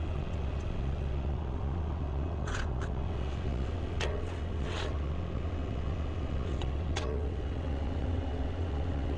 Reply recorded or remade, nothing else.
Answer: remade